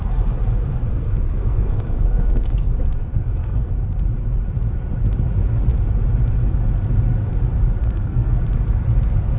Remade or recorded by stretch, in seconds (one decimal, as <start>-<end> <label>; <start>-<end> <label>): 0.0-0.9 recorded; 0.9-2.7 remade; 2.7-3.1 recorded; 3.1-3.7 remade; 3.7-7.8 recorded; 7.8-8.4 remade; 8.4-9.4 recorded